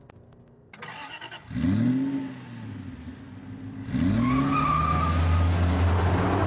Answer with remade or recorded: recorded